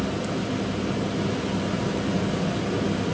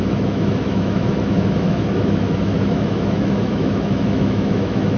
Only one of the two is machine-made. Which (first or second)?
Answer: second